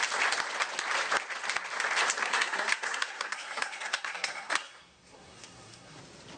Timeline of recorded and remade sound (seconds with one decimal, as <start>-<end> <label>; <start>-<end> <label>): 0.0-2.2 recorded; 2.2-6.0 remade; 6.0-6.4 recorded